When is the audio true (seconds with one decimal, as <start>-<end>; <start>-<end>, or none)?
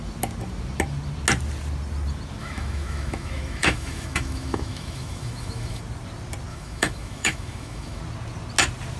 0.0-2.4; 5.8-6.5; 8.0-9.0